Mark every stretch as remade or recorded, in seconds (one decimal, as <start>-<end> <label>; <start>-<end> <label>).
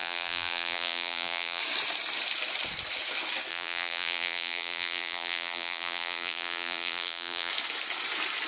0.0-1.6 remade; 1.6-3.5 recorded; 3.5-7.5 remade; 7.5-8.5 recorded